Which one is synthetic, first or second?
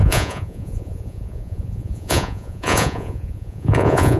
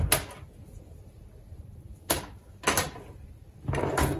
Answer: first